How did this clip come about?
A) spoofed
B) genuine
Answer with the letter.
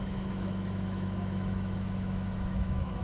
A